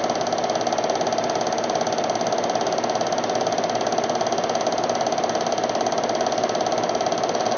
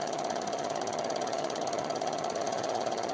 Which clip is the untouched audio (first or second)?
first